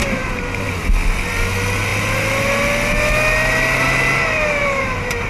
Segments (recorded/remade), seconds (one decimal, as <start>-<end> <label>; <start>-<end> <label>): 0.0-0.9 remade; 0.9-4.6 recorded; 4.6-5.3 remade